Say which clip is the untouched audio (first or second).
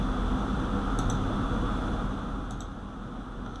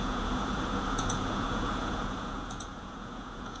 first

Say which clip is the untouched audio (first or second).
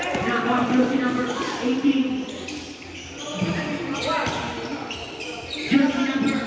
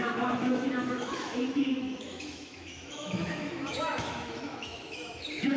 first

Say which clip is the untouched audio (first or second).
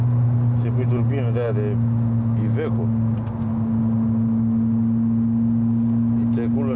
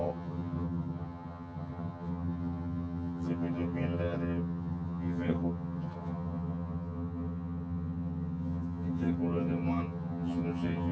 first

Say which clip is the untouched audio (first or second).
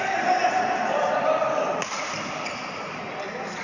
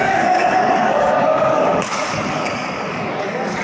first